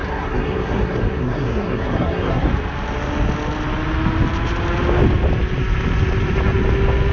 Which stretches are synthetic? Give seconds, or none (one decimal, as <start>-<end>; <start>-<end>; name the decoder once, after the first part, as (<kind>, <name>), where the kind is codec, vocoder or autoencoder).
0.0-2.5 (codec, SNAC)